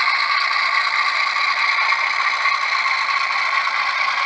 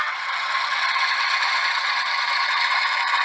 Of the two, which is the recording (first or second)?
first